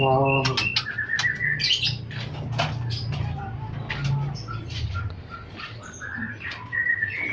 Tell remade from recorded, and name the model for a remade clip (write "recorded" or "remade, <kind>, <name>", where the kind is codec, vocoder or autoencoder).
recorded